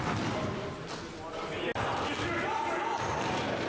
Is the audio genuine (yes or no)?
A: yes